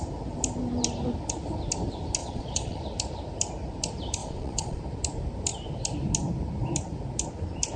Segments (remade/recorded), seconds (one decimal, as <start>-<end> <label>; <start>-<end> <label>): 0.0-2.2 recorded; 2.2-2.8 remade; 2.8-4.2 recorded; 4.2-4.8 remade; 4.8-7.8 recorded